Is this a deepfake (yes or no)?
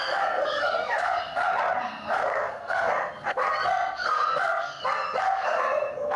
yes